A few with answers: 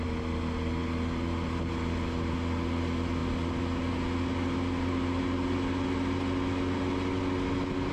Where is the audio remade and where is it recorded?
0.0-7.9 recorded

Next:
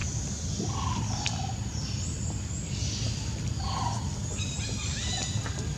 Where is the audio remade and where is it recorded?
0.0-5.8 recorded

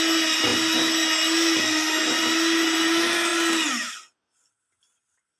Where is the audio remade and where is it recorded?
0.0-5.4 recorded